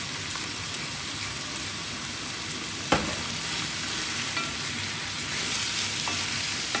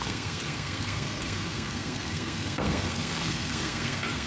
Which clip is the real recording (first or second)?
first